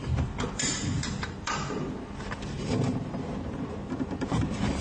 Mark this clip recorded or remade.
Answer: remade